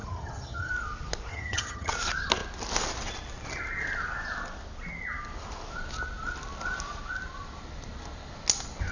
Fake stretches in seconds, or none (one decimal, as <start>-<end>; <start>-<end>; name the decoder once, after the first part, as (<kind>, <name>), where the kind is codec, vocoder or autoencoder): 0.0-0.7 (vocoder, HiFi-GAN); 1.3-1.9